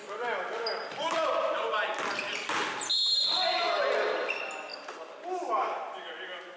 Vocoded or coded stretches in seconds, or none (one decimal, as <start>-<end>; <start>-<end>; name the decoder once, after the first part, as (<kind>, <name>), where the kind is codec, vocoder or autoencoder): 0.0-1.4 (vocoder, BigVGAN v2)